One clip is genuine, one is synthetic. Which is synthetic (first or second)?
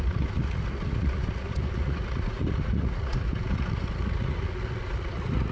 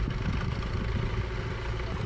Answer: first